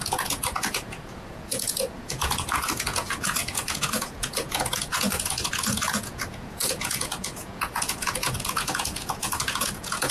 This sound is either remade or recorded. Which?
remade